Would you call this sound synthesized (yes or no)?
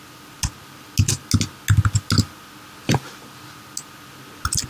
no